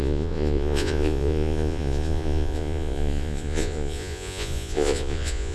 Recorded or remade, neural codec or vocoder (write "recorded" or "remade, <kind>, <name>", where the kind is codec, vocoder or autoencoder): remade, vocoder, Vocos